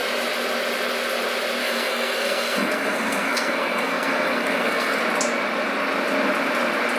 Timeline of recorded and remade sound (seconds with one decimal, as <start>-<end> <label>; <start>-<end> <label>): 0.0-1.6 recorded; 1.6-5.0 remade; 5.0-7.0 recorded